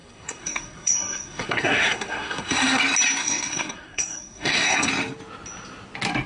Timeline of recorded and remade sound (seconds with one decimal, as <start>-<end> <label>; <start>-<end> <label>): 0.0-2.8 remade; 2.8-3.2 recorded; 3.2-4.9 remade; 4.9-6.3 recorded